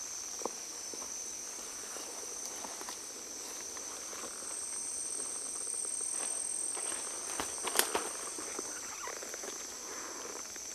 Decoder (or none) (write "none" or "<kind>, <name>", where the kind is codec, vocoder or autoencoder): none